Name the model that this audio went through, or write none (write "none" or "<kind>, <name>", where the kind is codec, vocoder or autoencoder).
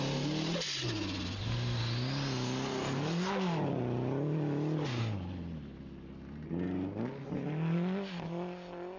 none